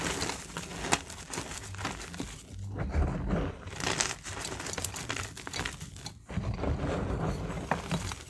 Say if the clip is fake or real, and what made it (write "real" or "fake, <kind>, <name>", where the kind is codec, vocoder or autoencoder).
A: real